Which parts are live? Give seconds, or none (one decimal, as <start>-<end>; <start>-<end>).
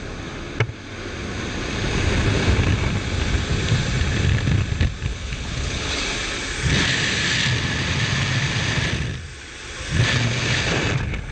0.0-5.1; 6.0-11.3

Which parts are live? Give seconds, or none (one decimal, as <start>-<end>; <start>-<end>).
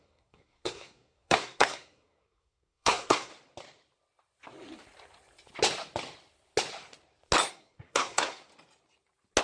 3.3-7.5; 8.5-9.4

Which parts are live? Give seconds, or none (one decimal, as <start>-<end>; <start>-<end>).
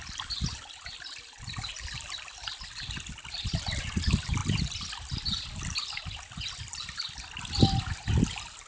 0.0-8.7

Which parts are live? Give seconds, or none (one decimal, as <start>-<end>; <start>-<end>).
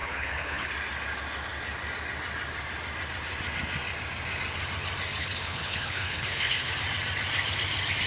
0.7-5.2; 6.7-8.1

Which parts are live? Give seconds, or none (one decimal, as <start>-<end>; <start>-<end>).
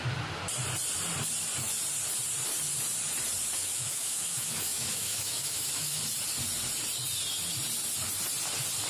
0.0-3.6; 6.0-8.9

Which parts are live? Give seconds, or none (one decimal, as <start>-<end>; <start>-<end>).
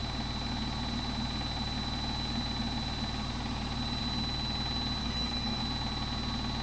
0.0-5.0; 5.6-6.6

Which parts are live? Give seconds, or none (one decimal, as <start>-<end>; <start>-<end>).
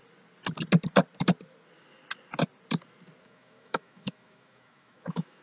0.0-3.2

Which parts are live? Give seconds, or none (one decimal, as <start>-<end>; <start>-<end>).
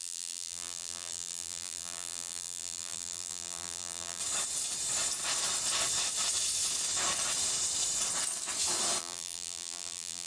4.2-9.0